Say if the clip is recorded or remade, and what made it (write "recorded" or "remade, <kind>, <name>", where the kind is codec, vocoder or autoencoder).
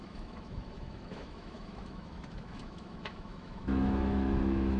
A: remade, autoencoder, DAC-VAE